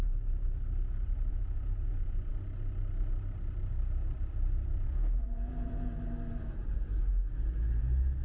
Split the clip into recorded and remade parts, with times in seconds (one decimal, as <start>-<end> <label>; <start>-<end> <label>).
0.0-1.3 recorded; 1.3-2.3 remade; 2.3-4.7 recorded; 4.7-5.9 remade; 5.9-8.2 recorded